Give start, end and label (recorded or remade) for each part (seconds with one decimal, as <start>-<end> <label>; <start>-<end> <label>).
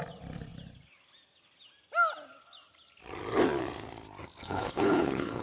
0.0-4.4 recorded; 4.4-5.4 remade